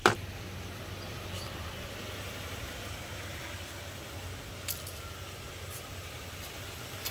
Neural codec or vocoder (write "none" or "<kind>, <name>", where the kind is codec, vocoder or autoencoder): none